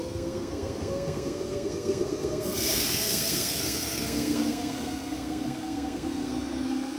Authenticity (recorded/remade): remade